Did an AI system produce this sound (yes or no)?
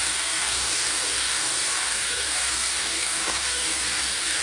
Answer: yes